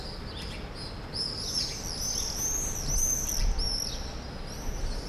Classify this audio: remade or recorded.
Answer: recorded